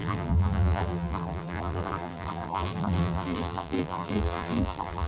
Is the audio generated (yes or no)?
yes